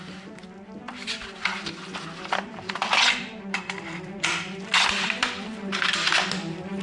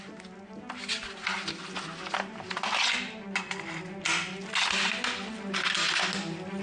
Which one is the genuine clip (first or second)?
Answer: second